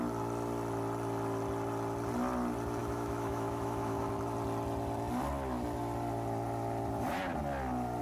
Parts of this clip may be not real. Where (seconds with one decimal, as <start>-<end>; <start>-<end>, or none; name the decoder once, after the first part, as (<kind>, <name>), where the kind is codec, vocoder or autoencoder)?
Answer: 2.8-4.1 (autoencoder, DAC-VAE)